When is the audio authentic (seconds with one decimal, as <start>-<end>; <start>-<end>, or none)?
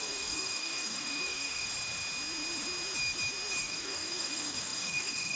1.7-3.6